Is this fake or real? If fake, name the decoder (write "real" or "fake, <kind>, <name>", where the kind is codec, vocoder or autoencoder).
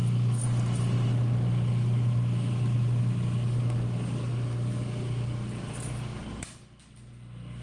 real